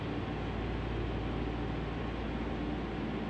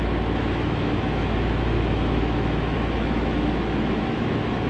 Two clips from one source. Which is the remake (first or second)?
second